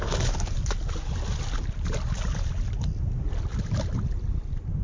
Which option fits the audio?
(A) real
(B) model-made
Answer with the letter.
A